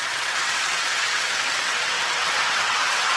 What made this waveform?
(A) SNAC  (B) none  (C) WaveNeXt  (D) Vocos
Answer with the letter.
C